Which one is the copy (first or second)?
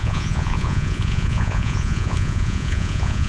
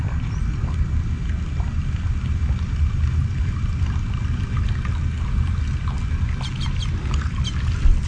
first